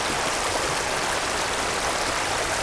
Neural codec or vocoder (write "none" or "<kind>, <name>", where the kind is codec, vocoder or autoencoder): none